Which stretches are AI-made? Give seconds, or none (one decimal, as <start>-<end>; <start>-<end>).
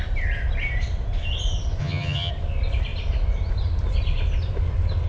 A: 1.8-2.3